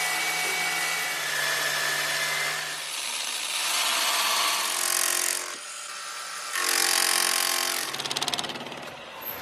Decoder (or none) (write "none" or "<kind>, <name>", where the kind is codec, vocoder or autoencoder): none